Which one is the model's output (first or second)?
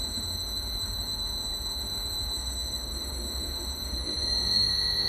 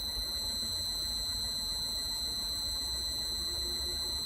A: first